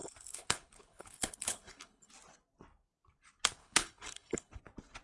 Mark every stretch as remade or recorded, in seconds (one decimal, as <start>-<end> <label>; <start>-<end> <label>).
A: 0.0-2.1 remade; 2.1-3.6 recorded; 3.6-4.6 remade; 4.6-5.0 recorded